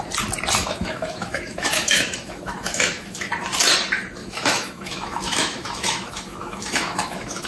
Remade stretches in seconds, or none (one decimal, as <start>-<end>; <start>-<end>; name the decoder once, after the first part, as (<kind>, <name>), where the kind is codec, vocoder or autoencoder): 0.6-3.3 (autoencoder, DAC-VAE); 4.2-7.5